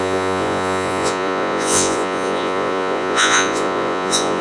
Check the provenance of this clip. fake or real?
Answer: fake